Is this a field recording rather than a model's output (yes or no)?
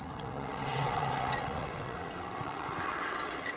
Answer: no